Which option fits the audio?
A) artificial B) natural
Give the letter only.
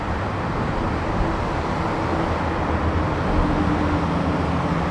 B